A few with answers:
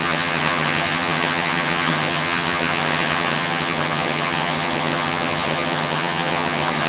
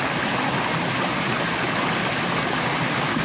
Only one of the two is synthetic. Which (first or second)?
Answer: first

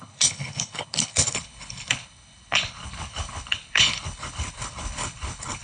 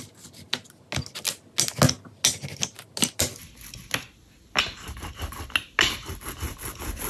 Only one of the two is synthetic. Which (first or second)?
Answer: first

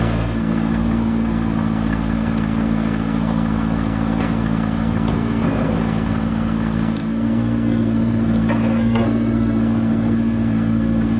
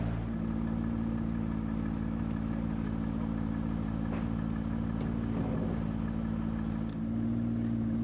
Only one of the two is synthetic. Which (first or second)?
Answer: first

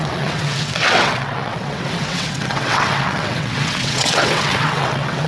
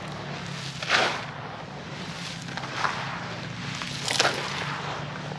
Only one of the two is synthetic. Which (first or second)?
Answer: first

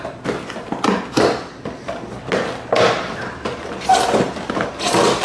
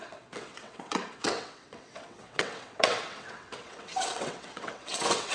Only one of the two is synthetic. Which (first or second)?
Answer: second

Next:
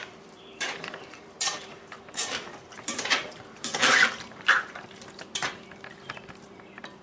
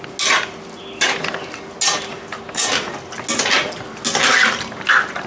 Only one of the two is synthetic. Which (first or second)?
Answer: first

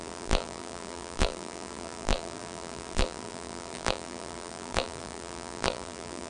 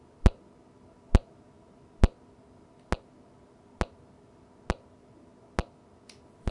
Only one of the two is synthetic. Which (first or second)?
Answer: first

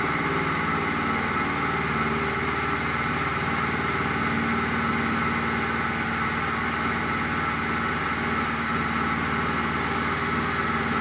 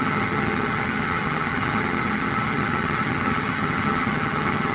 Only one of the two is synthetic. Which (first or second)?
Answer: second